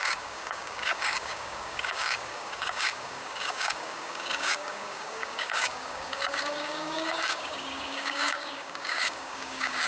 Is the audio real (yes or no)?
no